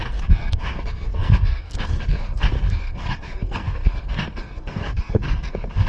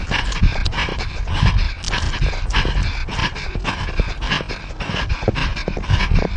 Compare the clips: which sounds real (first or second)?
second